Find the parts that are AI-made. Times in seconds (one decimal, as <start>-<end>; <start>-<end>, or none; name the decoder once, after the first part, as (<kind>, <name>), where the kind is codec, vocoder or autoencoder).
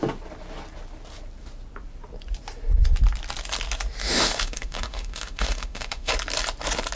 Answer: 4.0-6.1 (autoencoder, DAC-VAE)